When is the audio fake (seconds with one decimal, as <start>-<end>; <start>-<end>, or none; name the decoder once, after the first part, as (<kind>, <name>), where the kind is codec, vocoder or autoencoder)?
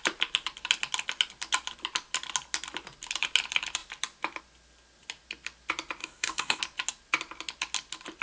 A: 6.0-6.6 (codec, DAC)